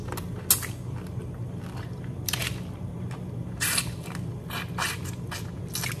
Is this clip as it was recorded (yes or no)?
yes